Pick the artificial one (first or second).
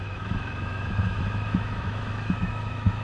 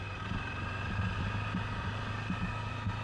first